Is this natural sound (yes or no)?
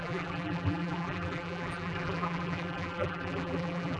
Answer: no